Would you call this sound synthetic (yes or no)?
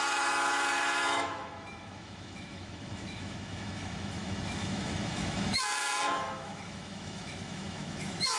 yes